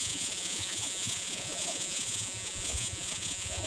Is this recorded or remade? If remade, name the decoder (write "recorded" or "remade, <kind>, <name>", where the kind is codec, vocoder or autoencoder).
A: remade, vocoder, Vocos